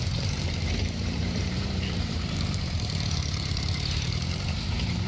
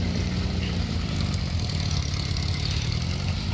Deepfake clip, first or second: first